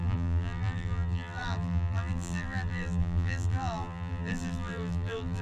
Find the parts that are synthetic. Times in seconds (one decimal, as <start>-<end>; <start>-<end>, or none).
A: 0.0-5.4